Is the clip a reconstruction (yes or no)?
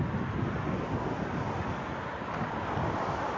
no